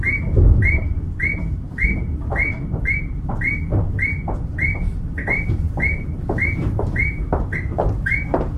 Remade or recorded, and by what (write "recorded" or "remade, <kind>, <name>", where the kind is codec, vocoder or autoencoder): remade, vocoder, BigVGAN v2